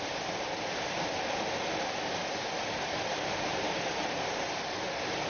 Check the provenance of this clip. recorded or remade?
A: remade